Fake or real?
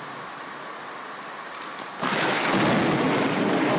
real